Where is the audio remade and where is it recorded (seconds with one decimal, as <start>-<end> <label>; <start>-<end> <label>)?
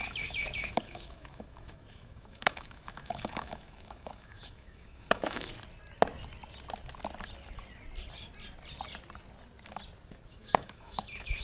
0.0-5.5 remade; 5.5-10.3 recorded; 10.3-11.4 remade